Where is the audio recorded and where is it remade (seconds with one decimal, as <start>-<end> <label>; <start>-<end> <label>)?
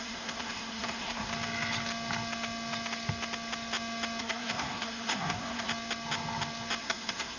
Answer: 0.0-1.3 remade; 1.3-4.2 recorded; 4.2-5.7 remade; 5.7-6.8 recorded; 6.8-7.4 remade